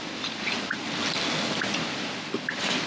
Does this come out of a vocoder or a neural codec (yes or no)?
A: no